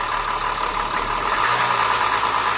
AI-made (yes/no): no